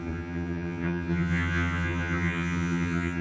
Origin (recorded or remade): remade